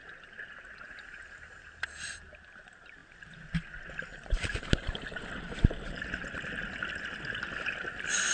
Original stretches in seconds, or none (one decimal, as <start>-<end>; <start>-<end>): 0.0-8.3